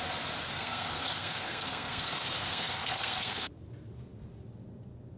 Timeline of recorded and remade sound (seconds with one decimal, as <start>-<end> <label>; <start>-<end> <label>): 0.0-0.4 recorded; 0.4-3.5 remade; 3.5-5.2 recorded